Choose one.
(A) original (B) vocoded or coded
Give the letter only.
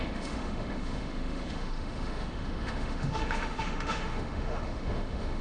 B